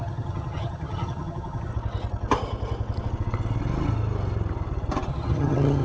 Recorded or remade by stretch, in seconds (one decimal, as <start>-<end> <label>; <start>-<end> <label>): 0.0-1.7 remade; 1.7-5.1 recorded; 5.1-5.8 remade